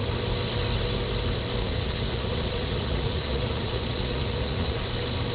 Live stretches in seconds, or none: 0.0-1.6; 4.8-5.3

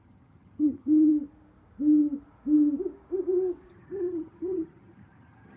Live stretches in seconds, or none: 1.1-3.7

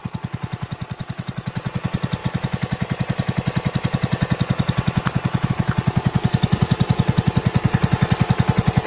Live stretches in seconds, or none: 0.0-8.9

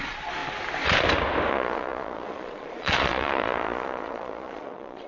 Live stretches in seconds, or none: 0.4-1.5